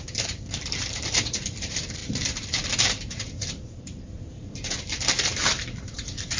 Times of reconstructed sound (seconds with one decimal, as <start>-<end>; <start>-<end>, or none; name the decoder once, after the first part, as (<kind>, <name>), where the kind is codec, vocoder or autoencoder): 0.0-6.4 (vocoder, BigVGAN v2)